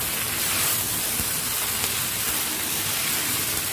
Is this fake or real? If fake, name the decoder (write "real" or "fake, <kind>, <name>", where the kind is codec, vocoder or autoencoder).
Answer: real